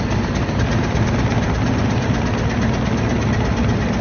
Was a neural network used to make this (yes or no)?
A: no